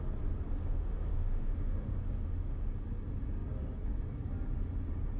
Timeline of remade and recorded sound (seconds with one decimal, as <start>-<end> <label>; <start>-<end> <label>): 0.0-0.6 recorded; 0.6-2.7 remade; 2.7-5.2 recorded